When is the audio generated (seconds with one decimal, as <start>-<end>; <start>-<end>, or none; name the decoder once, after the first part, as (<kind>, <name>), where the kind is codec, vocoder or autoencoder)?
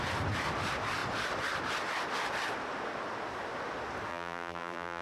4.1-5.0 (vocoder, BigVGAN v2)